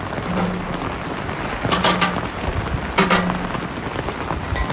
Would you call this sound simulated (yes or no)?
no